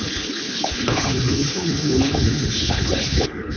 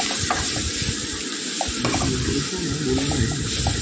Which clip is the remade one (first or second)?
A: first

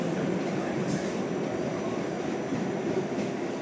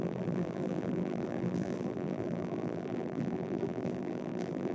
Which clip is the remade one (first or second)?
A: second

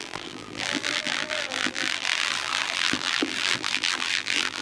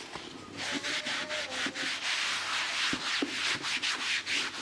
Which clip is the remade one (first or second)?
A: first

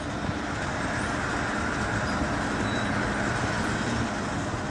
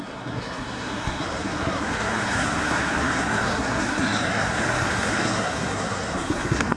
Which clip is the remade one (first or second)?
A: second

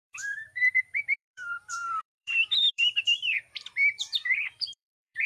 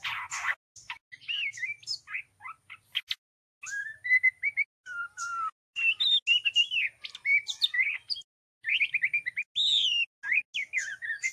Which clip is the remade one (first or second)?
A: first